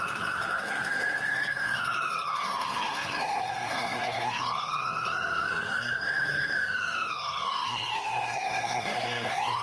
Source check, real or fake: fake